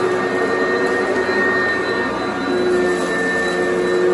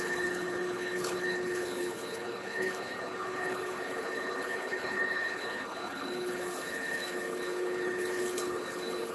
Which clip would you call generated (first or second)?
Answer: second